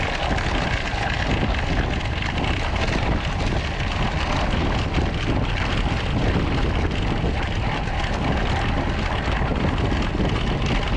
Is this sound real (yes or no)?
yes